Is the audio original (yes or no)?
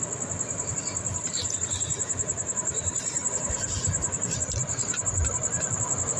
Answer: yes